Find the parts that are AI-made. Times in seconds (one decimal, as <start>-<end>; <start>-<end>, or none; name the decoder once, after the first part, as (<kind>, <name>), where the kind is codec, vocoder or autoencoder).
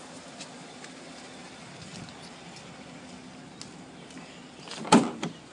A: none